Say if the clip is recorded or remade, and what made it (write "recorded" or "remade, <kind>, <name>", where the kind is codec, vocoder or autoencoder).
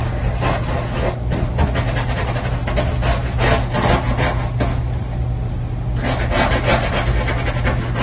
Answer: recorded